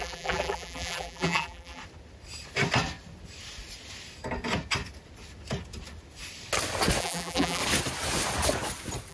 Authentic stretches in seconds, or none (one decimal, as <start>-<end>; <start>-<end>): 1.8-7.0; 7.6-9.1